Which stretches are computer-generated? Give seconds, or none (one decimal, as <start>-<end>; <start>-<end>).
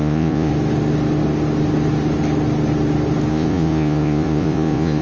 0.0-0.5; 3.3-5.0